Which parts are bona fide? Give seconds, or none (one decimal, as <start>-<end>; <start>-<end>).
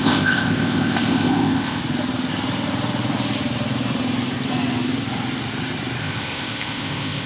1.8-6.0